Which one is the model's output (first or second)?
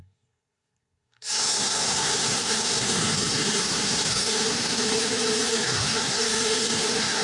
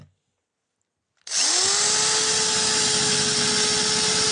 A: first